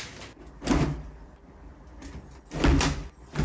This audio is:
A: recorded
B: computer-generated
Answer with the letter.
A